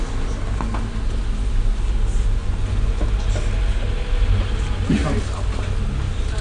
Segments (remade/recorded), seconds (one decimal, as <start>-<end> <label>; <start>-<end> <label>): 0.0-2.4 recorded; 2.4-3.0 remade; 3.0-6.4 recorded